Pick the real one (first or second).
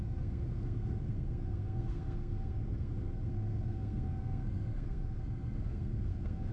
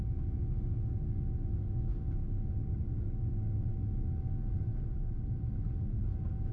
second